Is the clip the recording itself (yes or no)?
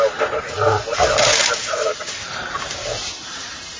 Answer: yes